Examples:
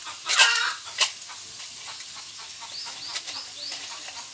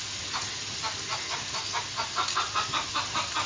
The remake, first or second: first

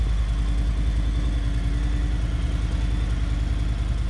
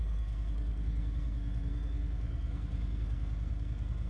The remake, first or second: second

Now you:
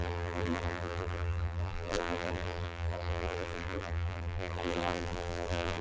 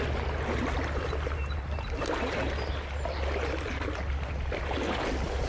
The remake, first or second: first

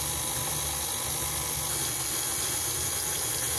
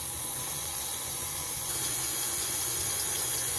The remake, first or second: second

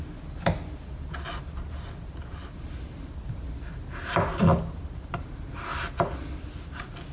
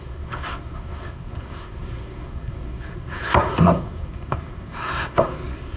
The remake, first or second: second